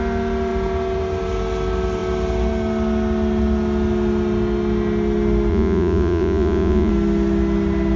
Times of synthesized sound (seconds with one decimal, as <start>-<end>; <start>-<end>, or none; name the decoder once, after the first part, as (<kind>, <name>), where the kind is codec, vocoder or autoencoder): 5.5-6.9 (vocoder, Vocos)